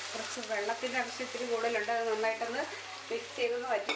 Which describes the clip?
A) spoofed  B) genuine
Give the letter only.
B